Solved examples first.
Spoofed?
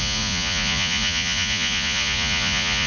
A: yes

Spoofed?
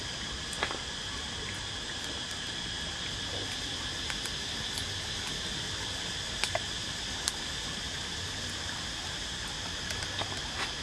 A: no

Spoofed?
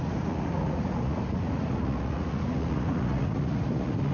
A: yes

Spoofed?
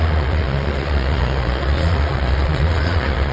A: yes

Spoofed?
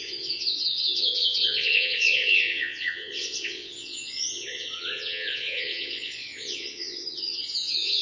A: yes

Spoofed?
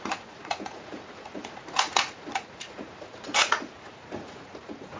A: yes